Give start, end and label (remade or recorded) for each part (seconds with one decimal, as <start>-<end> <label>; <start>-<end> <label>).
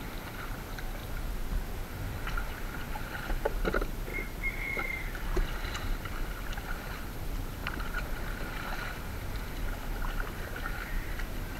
0.0-1.0 recorded; 1.0-2.4 remade; 2.4-4.1 recorded; 4.1-6.3 remade; 6.3-7.6 recorded; 7.6-9.4 remade; 9.4-11.6 recorded